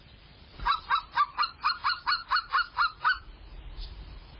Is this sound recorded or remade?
recorded